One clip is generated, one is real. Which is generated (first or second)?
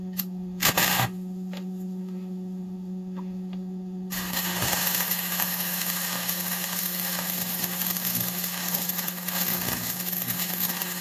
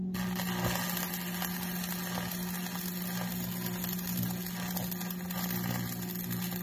first